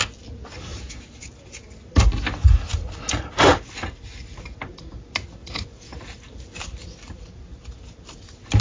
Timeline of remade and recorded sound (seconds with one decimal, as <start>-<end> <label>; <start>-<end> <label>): 0.0-5.4 recorded; 5.4-6.0 remade; 6.0-8.6 recorded